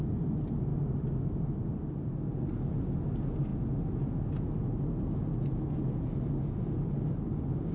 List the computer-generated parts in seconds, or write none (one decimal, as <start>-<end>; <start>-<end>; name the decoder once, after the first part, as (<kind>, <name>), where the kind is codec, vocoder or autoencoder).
none